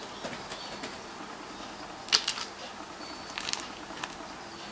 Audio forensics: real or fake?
real